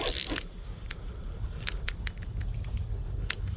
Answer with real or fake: real